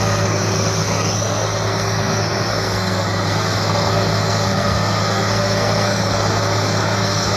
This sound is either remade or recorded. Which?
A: remade